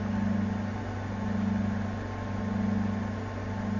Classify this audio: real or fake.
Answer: real